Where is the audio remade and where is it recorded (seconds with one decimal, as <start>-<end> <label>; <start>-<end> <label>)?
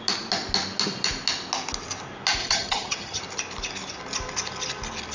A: 0.0-2.4 recorded; 2.4-3.2 remade; 3.2-5.1 recorded